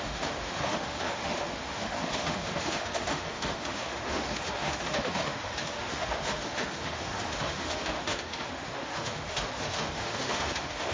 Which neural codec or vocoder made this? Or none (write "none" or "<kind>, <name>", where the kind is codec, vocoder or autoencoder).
autoencoder, DAC-VAE